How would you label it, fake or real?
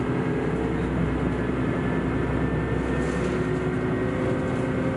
real